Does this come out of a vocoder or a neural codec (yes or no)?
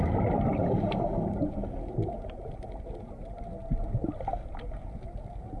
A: no